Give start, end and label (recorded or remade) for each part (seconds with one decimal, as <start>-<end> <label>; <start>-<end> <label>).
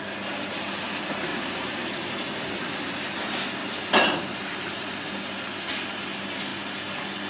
0.0-1.3 recorded; 1.3-2.4 remade; 2.4-3.6 recorded; 3.6-5.1 remade; 5.1-7.3 recorded